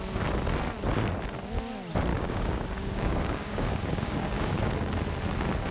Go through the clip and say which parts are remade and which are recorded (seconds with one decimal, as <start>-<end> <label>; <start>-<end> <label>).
0.0-2.1 recorded; 2.1-4.6 remade; 4.6-5.7 recorded